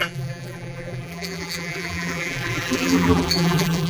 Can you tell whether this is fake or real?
fake